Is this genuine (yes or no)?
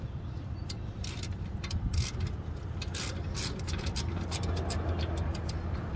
yes